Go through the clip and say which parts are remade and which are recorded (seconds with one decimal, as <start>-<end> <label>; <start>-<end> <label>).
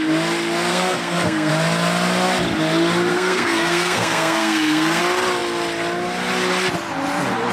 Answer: 0.0-0.7 recorded; 0.7-1.5 remade; 1.5-3.1 recorded; 3.1-5.0 remade; 5.0-7.5 recorded